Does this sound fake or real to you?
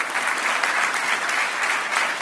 real